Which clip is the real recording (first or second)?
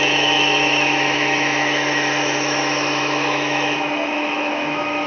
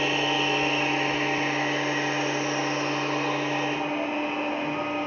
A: second